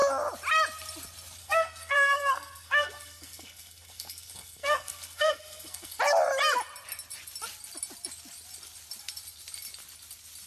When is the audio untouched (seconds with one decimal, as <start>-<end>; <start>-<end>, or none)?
0.0-1.4; 6.0-10.5